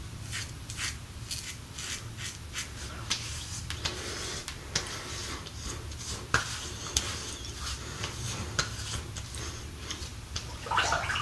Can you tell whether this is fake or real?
real